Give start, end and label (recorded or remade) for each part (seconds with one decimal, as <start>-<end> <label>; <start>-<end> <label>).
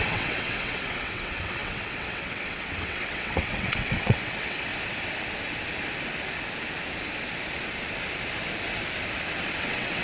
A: 0.0-4.7 remade; 4.7-9.6 recorded; 9.6-10.0 remade